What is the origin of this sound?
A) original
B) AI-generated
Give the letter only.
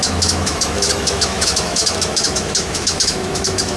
B